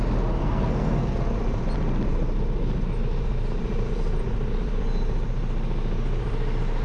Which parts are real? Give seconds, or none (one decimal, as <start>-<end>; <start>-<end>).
0.0-0.4; 1.2-6.8